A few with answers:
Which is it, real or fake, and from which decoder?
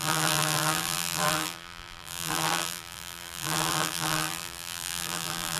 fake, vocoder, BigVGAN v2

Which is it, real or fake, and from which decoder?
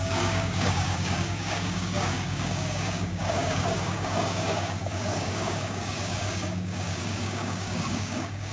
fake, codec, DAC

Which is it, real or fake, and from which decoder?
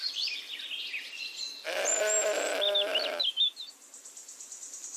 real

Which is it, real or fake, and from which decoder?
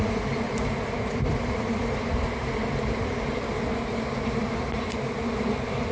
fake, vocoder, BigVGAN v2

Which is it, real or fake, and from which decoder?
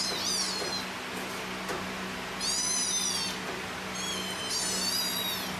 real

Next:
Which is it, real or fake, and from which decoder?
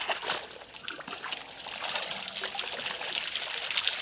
real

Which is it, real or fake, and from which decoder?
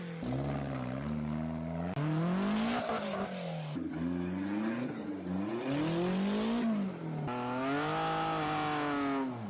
real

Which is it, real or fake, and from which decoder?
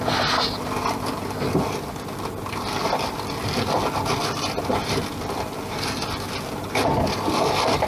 real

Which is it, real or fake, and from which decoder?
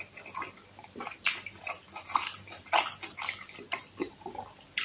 real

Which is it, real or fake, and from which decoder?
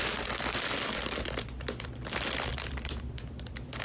fake, vocoder, BigVGAN v2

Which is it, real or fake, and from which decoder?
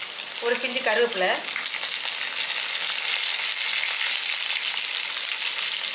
real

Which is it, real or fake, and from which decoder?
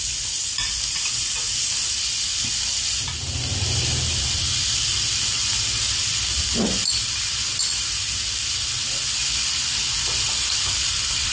real